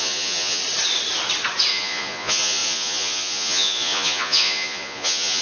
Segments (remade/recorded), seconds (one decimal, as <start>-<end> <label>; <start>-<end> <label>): 0.0-0.6 remade; 0.6-1.7 recorded; 1.7-5.4 remade